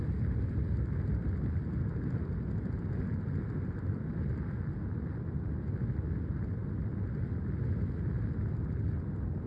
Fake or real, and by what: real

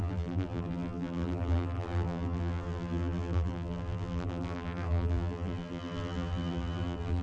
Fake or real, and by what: fake, vocoder, BigVGAN v2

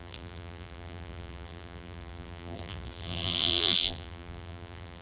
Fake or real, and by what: fake, vocoder, BigVGAN v2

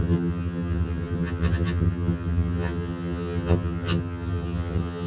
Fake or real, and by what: fake, vocoder, HiFi-GAN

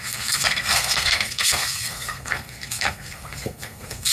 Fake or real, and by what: fake, codec, SNAC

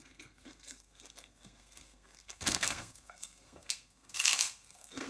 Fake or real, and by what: fake, codec, SNAC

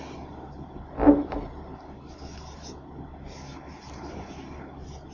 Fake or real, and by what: real